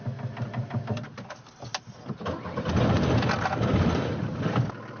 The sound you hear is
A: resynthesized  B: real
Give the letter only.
B